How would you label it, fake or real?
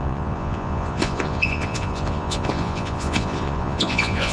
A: fake